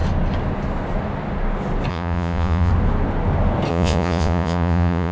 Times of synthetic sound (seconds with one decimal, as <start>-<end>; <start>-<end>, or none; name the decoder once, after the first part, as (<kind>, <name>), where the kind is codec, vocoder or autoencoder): 1.9-2.7 (vocoder, Vocos); 3.7-5.1